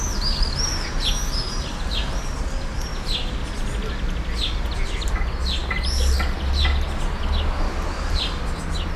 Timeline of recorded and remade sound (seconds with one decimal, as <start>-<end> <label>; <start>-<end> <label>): 0.0-9.0 recorded